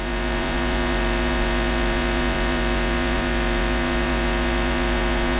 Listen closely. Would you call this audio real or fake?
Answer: fake